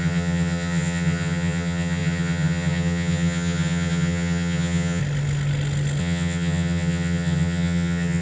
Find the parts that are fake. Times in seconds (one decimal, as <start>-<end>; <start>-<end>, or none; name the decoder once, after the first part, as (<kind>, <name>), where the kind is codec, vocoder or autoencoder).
0.0-5.0 (vocoder, HiFi-GAN); 6.0-8.2